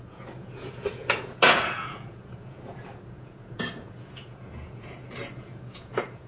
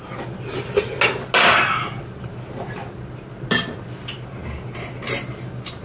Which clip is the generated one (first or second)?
first